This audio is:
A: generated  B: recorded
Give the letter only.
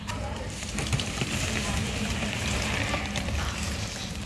A